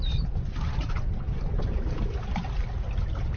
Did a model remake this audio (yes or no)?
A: no